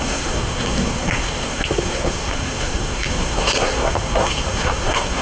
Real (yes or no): no